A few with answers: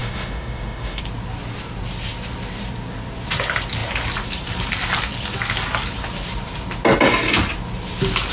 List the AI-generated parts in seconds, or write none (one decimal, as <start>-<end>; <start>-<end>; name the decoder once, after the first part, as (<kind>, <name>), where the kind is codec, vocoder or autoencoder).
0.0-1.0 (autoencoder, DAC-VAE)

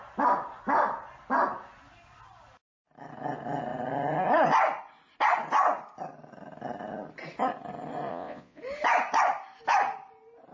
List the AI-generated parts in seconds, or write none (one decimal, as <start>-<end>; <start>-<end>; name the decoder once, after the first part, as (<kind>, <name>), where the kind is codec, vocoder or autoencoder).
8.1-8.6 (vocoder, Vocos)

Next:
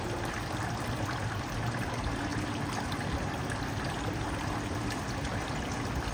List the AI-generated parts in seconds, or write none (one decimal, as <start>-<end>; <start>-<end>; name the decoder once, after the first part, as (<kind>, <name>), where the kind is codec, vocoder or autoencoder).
none

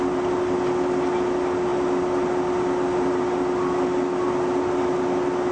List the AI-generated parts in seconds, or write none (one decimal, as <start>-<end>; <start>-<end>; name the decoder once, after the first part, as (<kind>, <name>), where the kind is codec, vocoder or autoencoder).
none

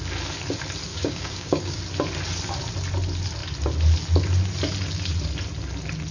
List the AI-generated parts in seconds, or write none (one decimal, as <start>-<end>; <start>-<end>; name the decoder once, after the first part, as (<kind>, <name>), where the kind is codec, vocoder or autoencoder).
0.9-1.8 (codec, DAC)